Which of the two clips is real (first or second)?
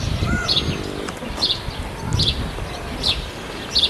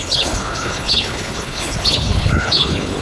first